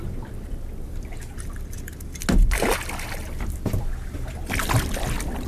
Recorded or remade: recorded